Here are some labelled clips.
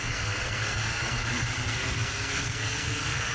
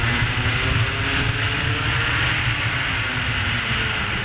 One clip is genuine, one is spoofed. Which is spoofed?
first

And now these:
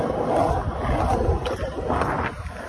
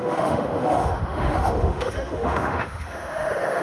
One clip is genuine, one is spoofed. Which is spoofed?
second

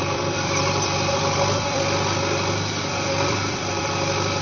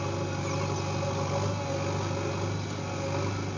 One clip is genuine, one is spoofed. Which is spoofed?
first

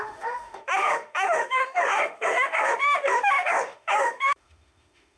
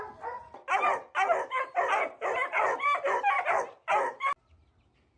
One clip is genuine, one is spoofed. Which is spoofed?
first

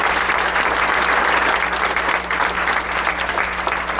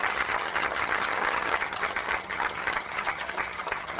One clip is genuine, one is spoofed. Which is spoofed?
second